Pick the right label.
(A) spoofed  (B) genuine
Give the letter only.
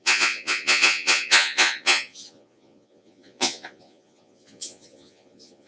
A